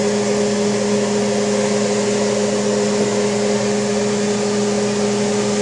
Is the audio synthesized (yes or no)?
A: no